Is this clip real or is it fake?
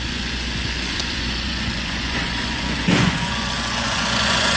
fake